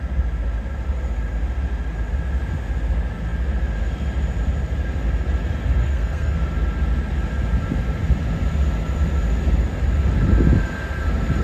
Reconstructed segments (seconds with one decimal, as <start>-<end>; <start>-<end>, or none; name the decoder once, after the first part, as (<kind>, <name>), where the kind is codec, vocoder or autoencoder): 5.8-6.4 (codec, SNAC)